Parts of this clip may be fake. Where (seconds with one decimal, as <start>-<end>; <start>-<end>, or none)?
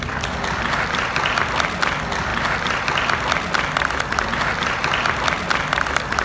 none